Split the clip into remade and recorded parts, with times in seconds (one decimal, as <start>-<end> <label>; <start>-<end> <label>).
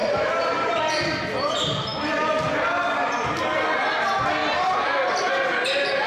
0.0-0.8 remade; 0.8-6.1 recorded